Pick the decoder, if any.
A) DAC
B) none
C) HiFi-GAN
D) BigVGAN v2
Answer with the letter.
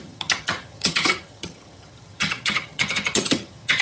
C